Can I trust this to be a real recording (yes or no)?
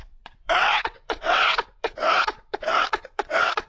no